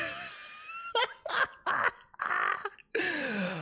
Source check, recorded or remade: recorded